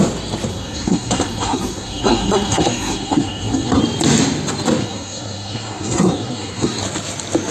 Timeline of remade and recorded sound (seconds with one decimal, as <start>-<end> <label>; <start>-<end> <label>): 0.0-0.5 recorded; 0.5-3.8 remade; 3.8-4.8 recorded; 4.8-6.8 remade; 6.8-7.5 recorded